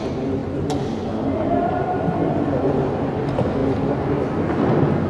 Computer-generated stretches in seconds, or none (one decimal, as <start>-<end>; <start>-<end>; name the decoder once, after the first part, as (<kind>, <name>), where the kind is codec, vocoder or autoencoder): none